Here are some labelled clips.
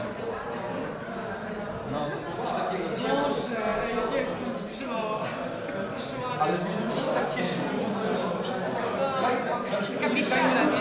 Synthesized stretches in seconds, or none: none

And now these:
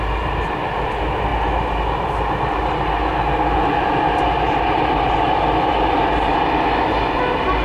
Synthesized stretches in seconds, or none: none

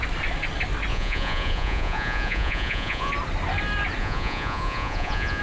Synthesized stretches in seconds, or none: 0.9-3.1 (vocoder, Vocos); 4.0-5.4

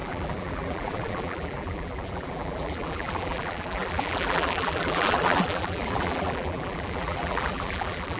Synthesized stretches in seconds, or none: 0.0-8.2 (vocoder, BigVGAN v2)

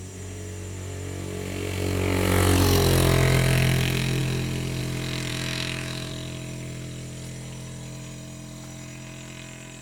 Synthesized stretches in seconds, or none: 5.3-6.1 (autoencoder, DAC-VAE)